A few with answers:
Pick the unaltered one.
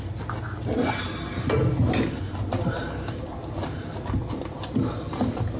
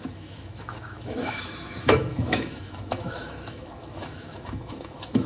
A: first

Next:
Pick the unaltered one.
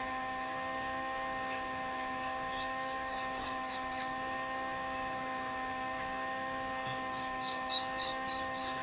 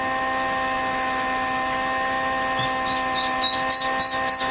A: second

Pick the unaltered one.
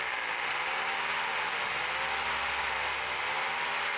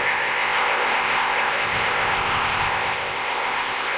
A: first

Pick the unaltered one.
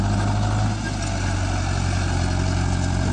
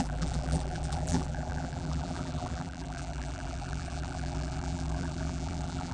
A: first